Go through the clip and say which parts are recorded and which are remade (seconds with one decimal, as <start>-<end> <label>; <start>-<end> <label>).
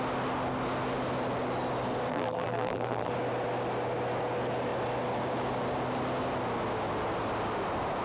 0.0-2.1 recorded; 2.1-3.1 remade; 3.1-8.0 recorded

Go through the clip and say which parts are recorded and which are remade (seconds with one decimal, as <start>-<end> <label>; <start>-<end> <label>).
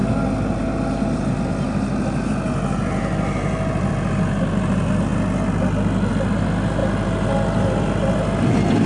0.0-8.9 recorded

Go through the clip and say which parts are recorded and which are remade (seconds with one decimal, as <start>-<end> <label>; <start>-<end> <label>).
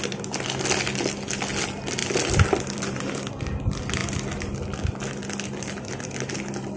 0.0-2.0 recorded; 2.0-3.3 remade; 3.3-6.8 recorded